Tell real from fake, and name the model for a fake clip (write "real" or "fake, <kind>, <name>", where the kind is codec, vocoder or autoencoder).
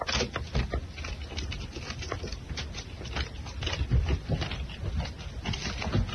real